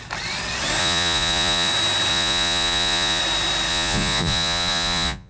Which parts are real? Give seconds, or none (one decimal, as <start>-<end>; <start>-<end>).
0.0-0.8; 1.7-2.1; 3.2-3.7